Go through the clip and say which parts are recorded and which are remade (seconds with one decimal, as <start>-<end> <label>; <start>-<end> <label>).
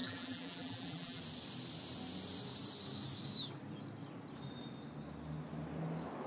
0.0-1.2 remade; 1.2-6.3 recorded